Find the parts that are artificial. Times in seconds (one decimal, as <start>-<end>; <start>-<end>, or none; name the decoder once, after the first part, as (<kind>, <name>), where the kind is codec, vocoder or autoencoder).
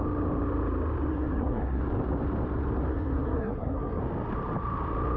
1.1-1.8 (codec, SNAC); 2.9-4.0